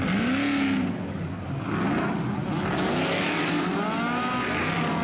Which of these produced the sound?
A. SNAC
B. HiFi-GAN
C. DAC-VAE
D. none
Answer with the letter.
D